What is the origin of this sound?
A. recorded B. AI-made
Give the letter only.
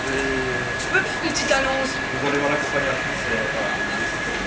A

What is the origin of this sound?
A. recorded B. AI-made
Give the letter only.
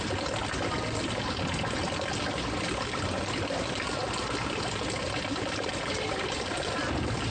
B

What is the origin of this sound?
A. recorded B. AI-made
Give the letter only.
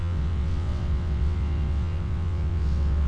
B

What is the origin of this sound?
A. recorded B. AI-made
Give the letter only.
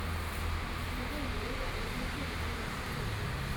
A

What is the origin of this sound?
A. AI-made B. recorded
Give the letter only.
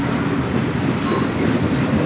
B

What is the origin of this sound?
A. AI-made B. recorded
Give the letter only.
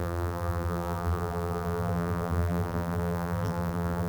A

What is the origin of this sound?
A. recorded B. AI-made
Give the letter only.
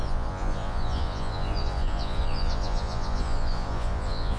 B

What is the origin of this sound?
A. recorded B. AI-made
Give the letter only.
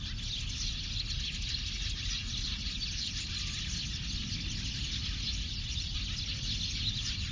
A